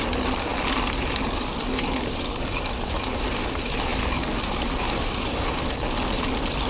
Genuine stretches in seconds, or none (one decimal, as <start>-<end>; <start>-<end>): 0.0-6.7